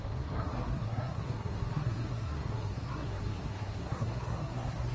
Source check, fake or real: fake